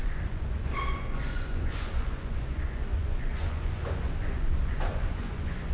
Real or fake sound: fake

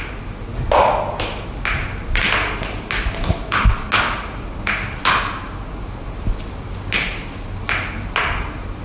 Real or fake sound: real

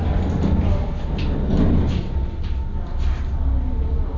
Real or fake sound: real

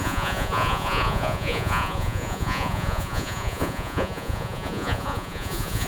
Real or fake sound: fake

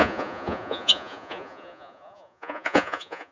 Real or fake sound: fake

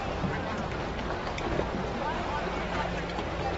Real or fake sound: real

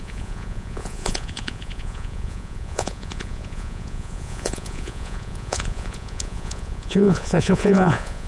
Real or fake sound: fake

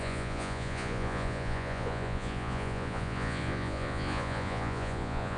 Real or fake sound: fake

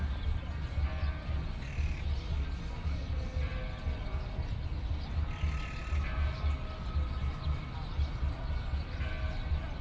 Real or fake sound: real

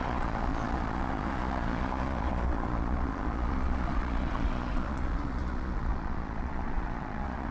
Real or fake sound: fake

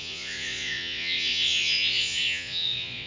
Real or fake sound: fake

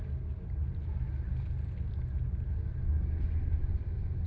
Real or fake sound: real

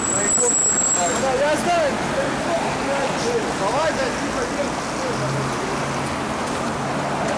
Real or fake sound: real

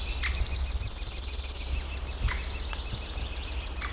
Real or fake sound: real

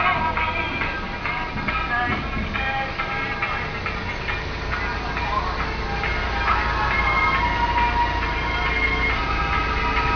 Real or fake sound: real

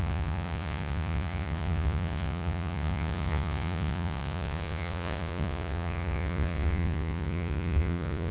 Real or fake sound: fake